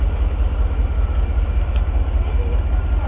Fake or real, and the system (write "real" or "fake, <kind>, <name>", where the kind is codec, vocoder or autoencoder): real